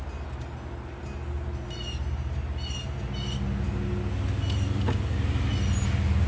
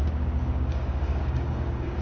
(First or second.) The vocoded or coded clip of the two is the second